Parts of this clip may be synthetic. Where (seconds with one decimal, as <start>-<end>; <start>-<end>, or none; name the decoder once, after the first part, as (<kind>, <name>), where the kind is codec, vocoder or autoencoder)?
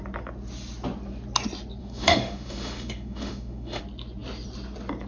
1.8-3.8 (autoencoder, DAC-VAE)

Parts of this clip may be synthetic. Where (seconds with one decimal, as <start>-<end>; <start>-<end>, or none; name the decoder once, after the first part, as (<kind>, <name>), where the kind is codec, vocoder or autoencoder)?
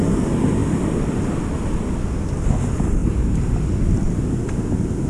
none